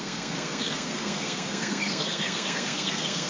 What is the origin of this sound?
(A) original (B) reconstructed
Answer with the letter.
B